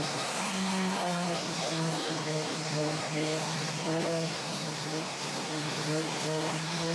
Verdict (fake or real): fake